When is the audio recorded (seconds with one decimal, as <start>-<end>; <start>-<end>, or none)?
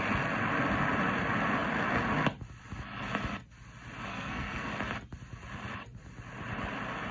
0.0-4.1; 4.7-7.1